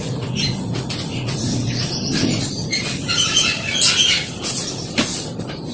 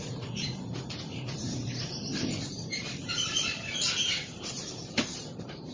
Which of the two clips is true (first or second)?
first